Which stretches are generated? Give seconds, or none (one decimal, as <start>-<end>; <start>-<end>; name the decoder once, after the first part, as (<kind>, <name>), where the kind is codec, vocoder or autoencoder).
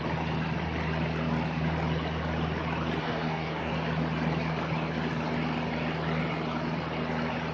3.0-3.7 (codec, DAC)